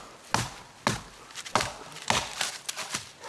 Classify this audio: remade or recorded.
recorded